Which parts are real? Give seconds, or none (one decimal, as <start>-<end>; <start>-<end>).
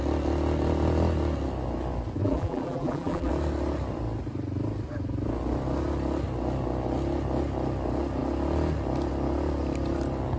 0.0-2.2; 3.3-10.4